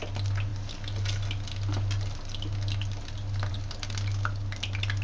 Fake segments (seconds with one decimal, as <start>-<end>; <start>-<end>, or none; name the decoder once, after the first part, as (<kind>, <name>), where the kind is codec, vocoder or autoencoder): none